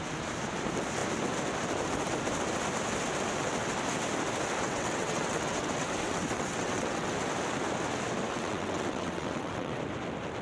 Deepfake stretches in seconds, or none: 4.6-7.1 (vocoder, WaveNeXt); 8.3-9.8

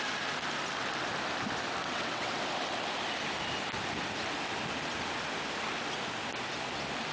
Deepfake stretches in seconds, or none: 1.8-2.4 (vocoder, WaveNeXt)